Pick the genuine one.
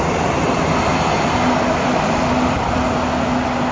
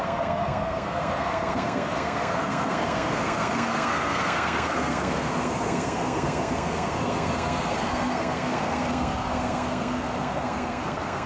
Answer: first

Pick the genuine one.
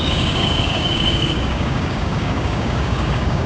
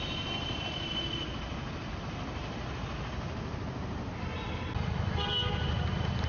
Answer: second